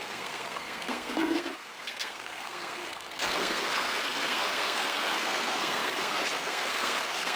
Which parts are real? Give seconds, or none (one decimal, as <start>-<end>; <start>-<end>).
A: none